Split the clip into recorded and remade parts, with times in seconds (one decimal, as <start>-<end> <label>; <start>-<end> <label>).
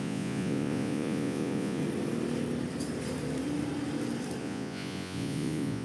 0.0-1.8 remade; 1.8-4.4 recorded; 4.4-5.8 remade